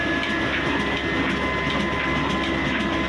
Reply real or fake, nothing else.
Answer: real